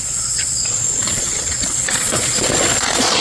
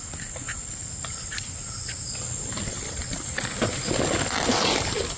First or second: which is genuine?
second